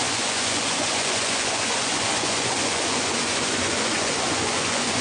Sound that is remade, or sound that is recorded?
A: remade